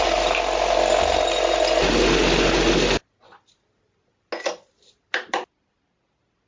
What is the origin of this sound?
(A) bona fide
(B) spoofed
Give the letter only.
A